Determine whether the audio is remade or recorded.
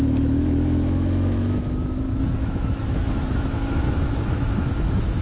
remade